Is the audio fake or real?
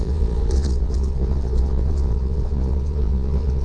fake